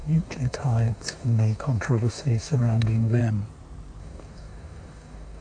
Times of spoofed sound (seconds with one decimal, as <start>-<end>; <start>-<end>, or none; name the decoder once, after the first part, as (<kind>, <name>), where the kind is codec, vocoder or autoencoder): 0.0-3.2 (codec, DAC); 4.0-5.4